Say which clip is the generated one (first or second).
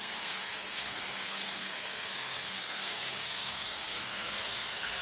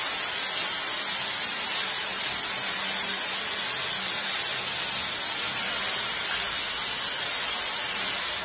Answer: first